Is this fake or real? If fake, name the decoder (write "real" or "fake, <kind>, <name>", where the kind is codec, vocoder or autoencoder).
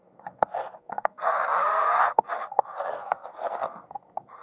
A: fake, codec, SNAC